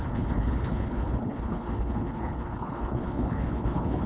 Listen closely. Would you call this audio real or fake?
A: fake